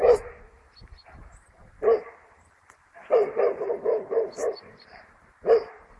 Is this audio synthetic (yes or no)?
yes